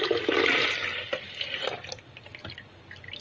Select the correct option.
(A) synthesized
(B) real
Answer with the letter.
B